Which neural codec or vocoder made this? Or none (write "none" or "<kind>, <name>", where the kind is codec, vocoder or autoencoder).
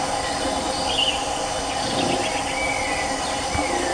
none